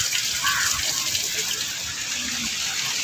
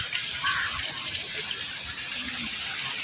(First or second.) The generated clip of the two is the second